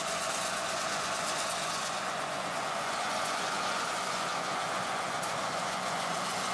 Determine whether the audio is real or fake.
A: fake